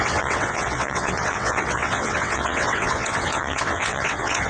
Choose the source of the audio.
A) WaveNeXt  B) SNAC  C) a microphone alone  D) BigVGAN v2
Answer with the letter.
A